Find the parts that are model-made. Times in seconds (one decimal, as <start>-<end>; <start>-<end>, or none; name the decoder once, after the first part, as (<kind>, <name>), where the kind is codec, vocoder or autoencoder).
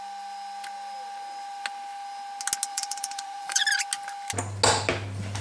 2.7-3.6 (vocoder, BigVGAN v2)